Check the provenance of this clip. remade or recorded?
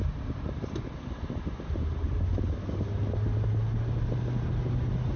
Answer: recorded